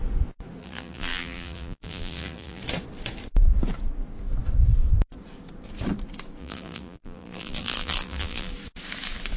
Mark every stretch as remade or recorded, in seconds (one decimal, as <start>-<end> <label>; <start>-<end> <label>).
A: 0.0-0.6 recorded; 0.6-2.6 remade; 2.6-6.4 recorded; 6.4-8.5 remade; 8.5-9.4 recorded